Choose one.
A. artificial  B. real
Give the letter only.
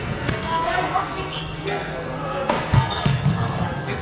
A